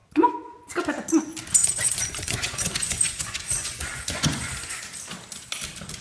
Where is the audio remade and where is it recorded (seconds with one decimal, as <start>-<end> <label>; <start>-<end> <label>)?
0.0-1.6 recorded; 1.6-4.8 remade; 4.8-6.0 recorded

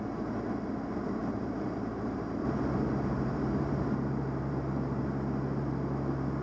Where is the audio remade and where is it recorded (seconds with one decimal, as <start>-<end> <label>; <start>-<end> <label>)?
0.0-1.2 recorded; 1.2-5.0 remade; 5.0-6.4 recorded

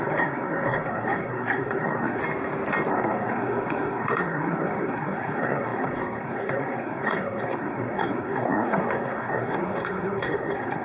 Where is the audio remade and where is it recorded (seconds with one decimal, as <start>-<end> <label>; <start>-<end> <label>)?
0.0-2.2 remade; 2.2-2.9 recorded; 2.9-10.8 remade

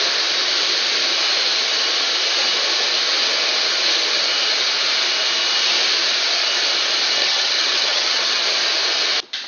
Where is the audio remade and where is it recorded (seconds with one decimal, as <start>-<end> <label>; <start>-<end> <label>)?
0.0-7.2 recorded; 7.2-8.4 remade; 8.4-9.5 recorded

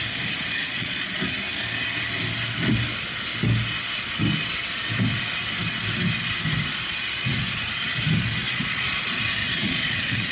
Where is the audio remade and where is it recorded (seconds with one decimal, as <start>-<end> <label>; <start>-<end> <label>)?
0.0-0.6 recorded; 0.6-1.2 remade; 1.2-8.4 recorded; 8.4-9.0 remade; 9.0-9.4 recorded; 9.4-10.3 remade

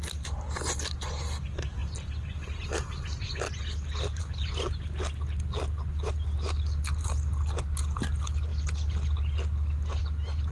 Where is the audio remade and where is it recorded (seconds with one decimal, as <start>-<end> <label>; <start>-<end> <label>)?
0.0-10.5 recorded